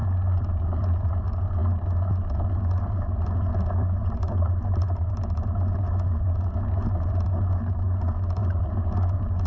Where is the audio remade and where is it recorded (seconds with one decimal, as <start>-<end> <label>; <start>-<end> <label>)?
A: 0.0-1.1 remade; 1.1-4.0 recorded; 4.0-5.1 remade; 5.1-8.4 recorded; 8.4-8.9 remade; 8.9-9.5 recorded